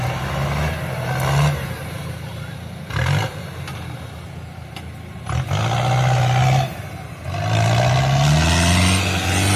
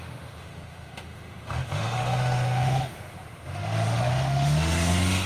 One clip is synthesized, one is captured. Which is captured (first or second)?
first